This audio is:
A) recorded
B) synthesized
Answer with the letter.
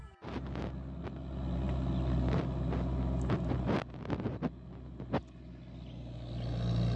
A